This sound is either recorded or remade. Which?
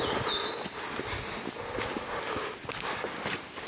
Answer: recorded